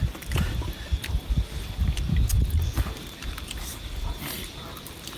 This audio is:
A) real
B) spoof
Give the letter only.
A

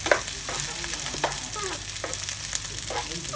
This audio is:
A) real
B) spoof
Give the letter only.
A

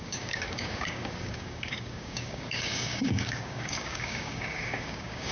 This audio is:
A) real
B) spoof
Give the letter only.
B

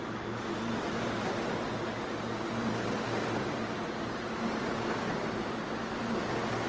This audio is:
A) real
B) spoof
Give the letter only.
A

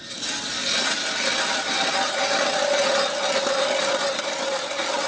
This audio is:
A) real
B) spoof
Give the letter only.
A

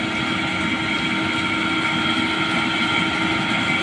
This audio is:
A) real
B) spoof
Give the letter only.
A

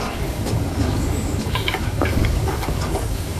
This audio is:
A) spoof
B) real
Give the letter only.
A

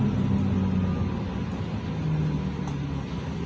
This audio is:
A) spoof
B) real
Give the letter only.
B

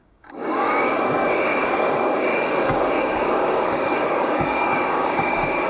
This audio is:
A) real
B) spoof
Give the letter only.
B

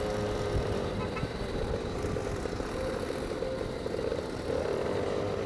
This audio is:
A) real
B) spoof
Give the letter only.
A